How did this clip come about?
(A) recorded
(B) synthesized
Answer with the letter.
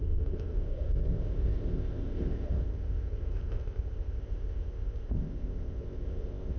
B